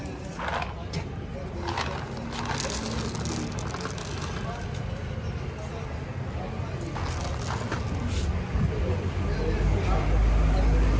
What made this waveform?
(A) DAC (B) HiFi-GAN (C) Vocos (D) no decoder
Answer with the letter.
D